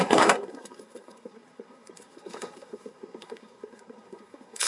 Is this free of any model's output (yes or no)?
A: no